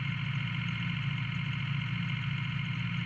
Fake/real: real